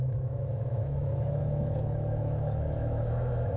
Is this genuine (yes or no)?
no